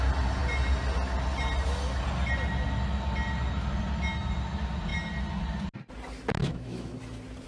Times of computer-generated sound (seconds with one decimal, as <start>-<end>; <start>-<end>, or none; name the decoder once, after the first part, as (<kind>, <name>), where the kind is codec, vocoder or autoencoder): 6.4-7.0 (autoencoder, DAC-VAE)